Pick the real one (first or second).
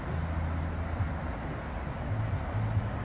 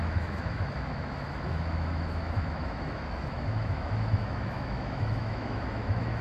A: first